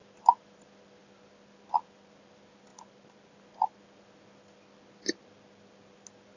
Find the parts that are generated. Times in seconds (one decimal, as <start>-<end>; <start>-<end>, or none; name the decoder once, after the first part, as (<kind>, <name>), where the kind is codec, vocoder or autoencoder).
none